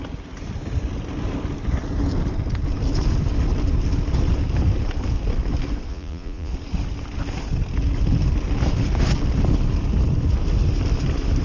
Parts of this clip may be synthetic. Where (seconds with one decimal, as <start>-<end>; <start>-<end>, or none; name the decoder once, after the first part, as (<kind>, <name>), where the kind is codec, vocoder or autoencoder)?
5.9-6.5 (vocoder, Vocos)